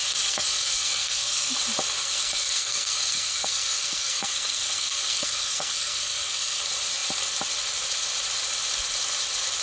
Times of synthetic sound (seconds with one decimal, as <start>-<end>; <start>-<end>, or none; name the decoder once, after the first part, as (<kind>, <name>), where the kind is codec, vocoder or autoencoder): 0.0-1.6 (codec, SNAC); 2.0-6.6